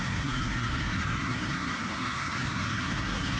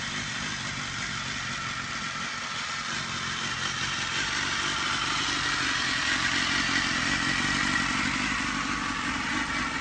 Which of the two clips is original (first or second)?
second